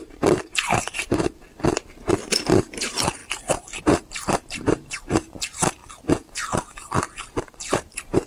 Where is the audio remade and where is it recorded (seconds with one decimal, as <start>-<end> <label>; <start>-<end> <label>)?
0.0-1.4 remade; 1.4-2.2 recorded; 2.2-3.2 remade; 3.2-3.8 recorded; 3.8-5.8 remade; 5.8-7.7 recorded; 7.7-8.3 remade